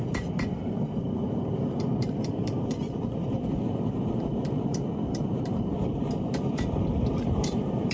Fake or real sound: fake